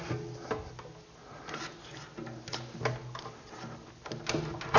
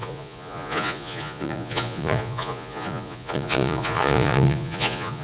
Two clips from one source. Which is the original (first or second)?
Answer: first